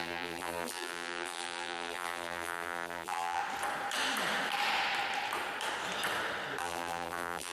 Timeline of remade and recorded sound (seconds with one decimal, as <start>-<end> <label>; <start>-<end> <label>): 0.0-3.4 remade; 3.4-6.6 recorded; 6.6-7.5 remade

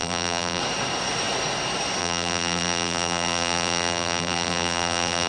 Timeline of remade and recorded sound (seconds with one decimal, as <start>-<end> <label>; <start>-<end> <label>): 0.0-0.6 remade; 0.6-2.0 recorded; 2.0-5.3 remade

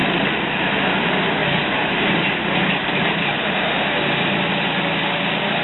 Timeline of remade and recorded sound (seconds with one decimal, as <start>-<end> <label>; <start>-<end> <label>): 0.0-1.4 recorded; 1.4-4.8 remade; 4.8-5.6 recorded

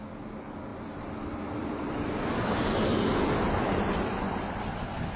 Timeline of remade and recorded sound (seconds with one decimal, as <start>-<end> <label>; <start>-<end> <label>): 0.0-0.7 recorded; 0.7-3.8 remade; 3.8-5.2 recorded

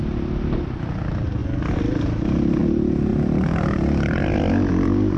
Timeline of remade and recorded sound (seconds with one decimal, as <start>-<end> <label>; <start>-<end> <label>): 0.0-5.2 recorded